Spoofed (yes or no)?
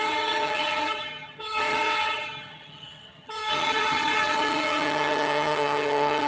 yes